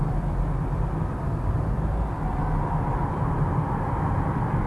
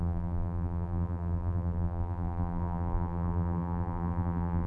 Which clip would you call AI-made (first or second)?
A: second